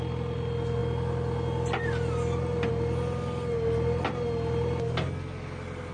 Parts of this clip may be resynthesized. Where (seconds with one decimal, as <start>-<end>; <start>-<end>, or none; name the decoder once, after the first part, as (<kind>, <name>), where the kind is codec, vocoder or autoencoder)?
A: none